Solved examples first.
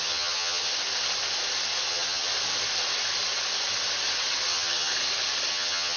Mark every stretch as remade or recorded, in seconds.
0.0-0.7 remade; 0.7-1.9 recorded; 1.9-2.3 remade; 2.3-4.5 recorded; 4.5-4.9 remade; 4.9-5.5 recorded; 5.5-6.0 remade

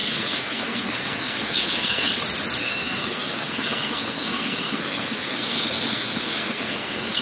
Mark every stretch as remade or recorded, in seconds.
0.0-2.1 remade; 2.1-2.6 recorded; 2.6-7.2 remade

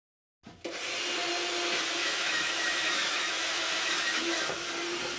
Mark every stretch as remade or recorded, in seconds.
0.0-2.0 recorded; 2.0-4.7 remade; 4.7-5.2 recorded

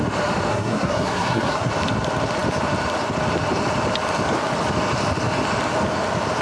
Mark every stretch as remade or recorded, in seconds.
0.0-0.5 recorded; 0.5-1.7 remade; 1.7-6.4 recorded

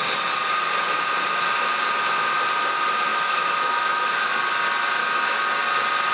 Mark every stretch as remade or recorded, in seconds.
0.0-3.1 recorded; 3.1-4.3 remade; 4.3-5.0 recorded; 5.0-5.5 remade; 5.5-6.1 recorded

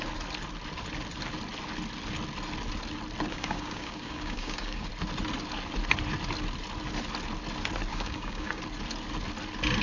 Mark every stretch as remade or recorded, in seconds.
0.0-3.3 recorded; 3.3-4.9 remade; 4.9-7.9 recorded; 7.9-8.6 remade; 8.6-9.8 recorded